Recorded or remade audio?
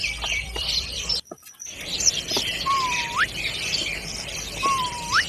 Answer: remade